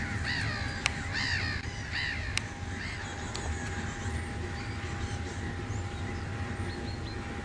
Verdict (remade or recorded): recorded